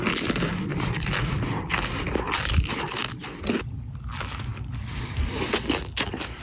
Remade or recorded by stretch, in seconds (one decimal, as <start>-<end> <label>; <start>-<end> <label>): 0.0-6.4 recorded